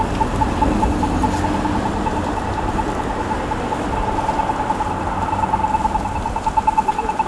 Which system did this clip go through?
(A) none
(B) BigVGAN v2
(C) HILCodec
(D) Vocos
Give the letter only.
A